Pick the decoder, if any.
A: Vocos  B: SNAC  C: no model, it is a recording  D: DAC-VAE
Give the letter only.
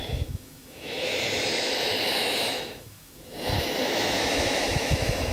D